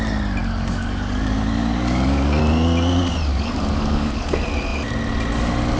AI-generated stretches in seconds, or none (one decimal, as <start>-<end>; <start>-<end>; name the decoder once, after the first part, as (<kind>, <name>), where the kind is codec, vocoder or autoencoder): 0.4-2.4 (codec, DAC); 3.3-4.3